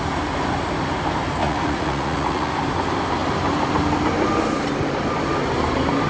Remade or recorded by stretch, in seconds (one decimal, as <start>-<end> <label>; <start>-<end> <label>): 0.0-1.4 recorded; 1.4-2.5 remade; 2.5-6.1 recorded